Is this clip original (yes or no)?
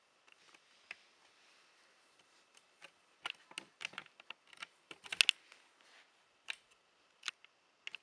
yes